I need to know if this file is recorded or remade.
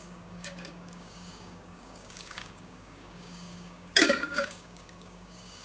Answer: remade